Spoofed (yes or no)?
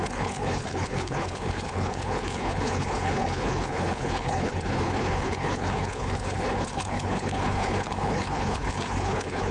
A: yes